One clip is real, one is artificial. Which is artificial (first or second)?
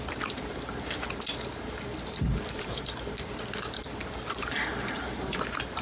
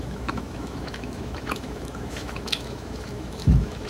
second